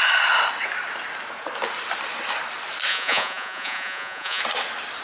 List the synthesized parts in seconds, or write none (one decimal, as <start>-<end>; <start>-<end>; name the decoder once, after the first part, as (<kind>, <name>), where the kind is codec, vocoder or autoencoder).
2.9-4.4 (vocoder, Vocos)